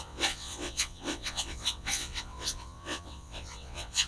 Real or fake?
fake